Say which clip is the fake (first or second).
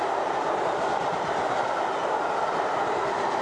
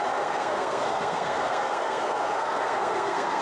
second